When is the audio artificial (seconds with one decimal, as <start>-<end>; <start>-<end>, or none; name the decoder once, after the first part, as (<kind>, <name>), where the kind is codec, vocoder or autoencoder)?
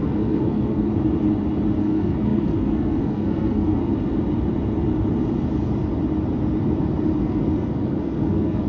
0.0-0.9 (codec, SNAC); 1.8-3.8; 7.2-8.7